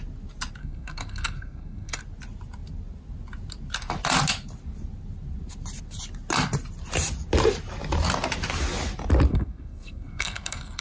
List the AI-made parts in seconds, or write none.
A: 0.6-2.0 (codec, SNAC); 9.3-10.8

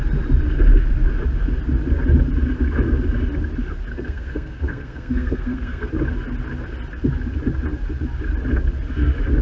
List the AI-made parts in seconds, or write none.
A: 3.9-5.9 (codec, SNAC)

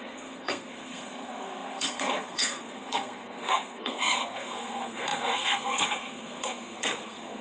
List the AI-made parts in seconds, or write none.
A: 0.0-7.4 (codec, SNAC)

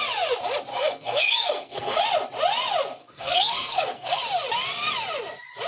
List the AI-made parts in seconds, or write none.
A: 0.7-2.0 (codec, SNAC); 3.0-4.2

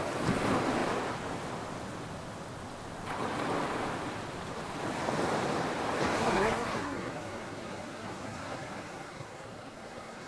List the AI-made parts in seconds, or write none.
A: 6.2-10.3 (codec, SNAC)

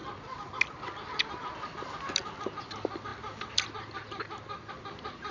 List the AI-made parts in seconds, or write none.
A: none